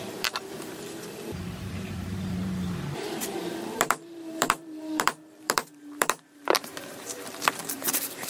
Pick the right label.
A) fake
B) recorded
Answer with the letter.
A